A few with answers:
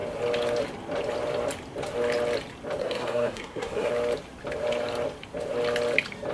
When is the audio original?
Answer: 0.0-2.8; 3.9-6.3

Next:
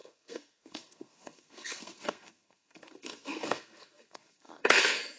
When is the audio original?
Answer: none

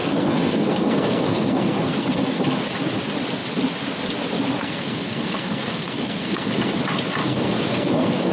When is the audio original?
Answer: 2.4-4.6; 6.8-7.2

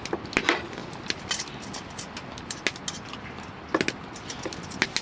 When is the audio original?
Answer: 0.0-5.0

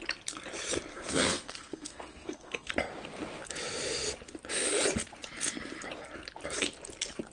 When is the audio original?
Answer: 0.0-0.9; 2.7-7.3